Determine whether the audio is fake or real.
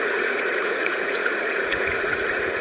fake